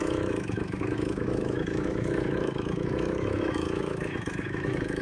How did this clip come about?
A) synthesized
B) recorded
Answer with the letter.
A